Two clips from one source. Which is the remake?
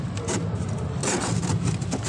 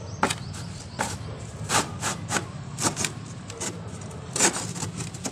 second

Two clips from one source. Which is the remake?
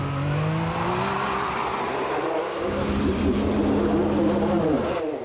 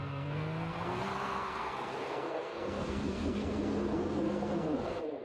second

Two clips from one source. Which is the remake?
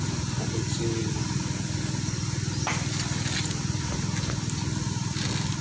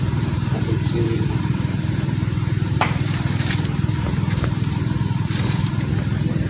second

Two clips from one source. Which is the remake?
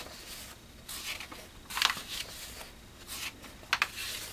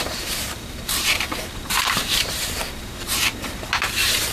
second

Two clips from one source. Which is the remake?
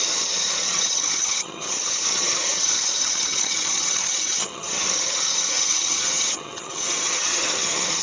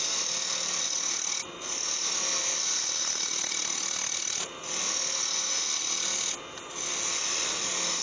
first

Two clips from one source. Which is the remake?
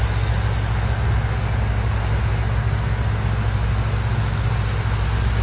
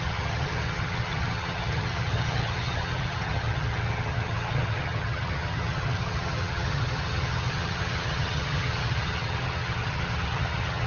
second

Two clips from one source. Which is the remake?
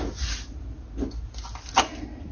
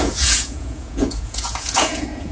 second